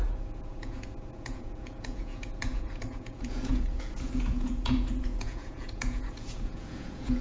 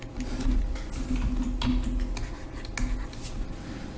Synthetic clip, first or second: first